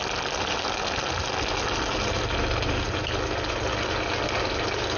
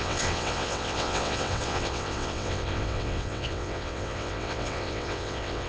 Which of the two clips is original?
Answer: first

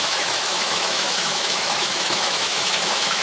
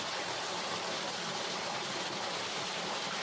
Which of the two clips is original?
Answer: second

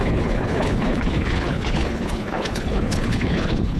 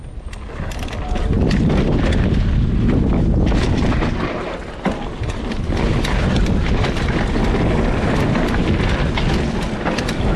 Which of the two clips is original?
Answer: second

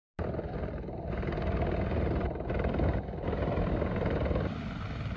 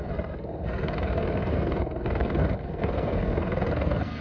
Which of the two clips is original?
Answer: first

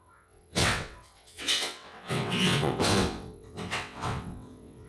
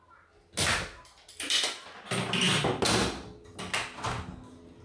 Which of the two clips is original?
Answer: second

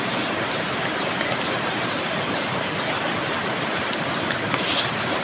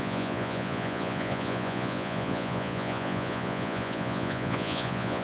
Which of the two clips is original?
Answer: first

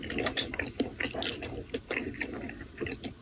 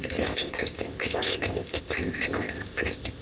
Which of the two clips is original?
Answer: first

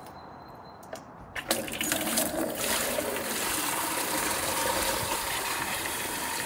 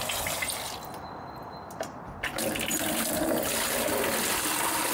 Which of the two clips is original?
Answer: second